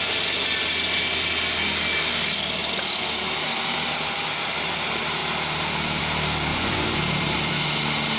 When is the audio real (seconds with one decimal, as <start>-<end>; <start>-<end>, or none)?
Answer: 0.0-6.5; 7.0-8.2